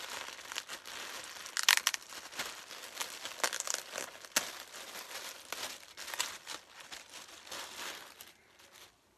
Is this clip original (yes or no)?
yes